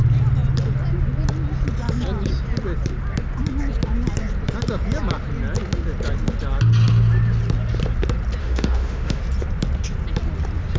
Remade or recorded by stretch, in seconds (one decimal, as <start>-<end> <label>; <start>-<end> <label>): 0.0-8.4 recorded; 8.4-9.2 remade; 9.2-10.8 recorded